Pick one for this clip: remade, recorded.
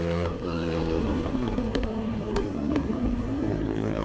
remade